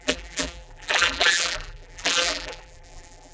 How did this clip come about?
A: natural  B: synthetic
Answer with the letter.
B